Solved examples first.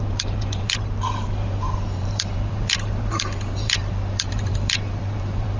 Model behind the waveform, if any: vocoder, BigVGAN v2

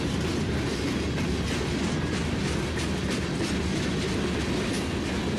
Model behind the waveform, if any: none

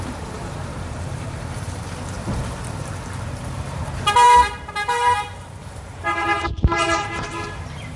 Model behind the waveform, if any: vocoder, BigVGAN v2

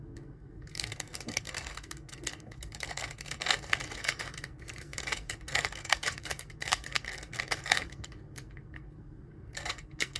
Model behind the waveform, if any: codec, SNAC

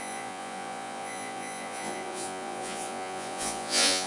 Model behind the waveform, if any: vocoder, Vocos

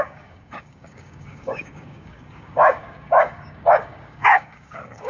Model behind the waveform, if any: codec, DAC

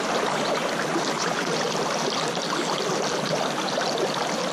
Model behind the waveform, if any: none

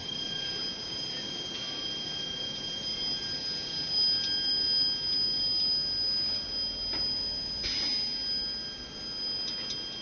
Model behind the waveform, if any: none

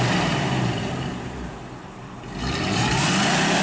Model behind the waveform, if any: none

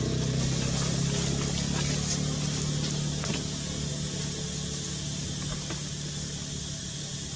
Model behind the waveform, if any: none